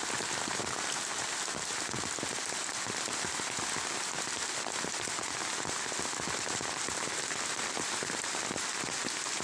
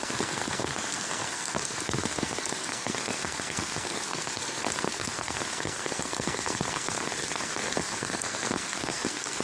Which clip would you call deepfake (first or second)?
second